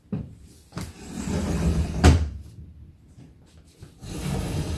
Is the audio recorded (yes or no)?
yes